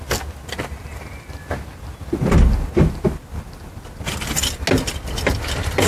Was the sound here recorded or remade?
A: recorded